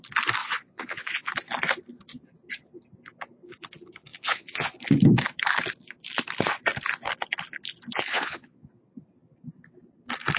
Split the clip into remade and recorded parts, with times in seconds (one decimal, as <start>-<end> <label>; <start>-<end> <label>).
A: 0.0-0.4 recorded; 0.4-1.3 remade; 1.3-4.1 recorded; 4.1-4.8 remade; 4.8-8.1 recorded; 8.1-8.7 remade; 8.7-10.4 recorded